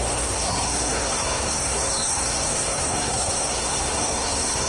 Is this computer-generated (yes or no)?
yes